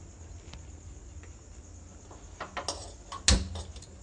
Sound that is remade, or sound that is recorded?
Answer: recorded